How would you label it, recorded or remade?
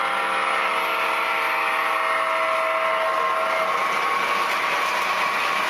recorded